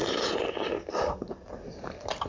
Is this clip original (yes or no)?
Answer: yes